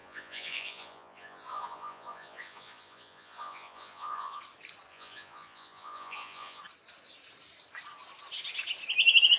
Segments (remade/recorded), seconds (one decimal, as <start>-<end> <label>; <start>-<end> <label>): 0.0-4.4 remade; 4.4-4.9 recorded; 4.9-6.6 remade; 6.6-9.4 recorded